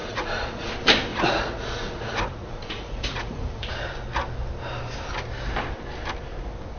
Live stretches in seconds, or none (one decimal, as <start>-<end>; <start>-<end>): 0.7-1.1; 3.7-6.8